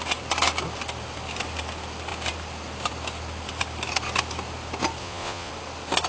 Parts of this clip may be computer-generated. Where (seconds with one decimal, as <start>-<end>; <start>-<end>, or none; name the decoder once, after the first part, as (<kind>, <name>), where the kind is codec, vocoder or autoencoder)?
5.0-5.5 (vocoder, Vocos)